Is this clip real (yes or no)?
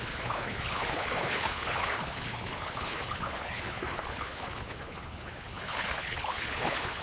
no